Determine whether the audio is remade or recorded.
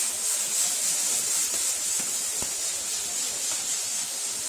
recorded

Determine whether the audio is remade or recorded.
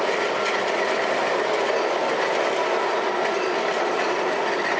recorded